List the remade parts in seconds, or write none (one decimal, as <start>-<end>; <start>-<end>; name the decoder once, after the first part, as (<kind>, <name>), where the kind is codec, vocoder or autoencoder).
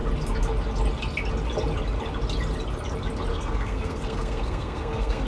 3.3-5.3 (codec, SNAC)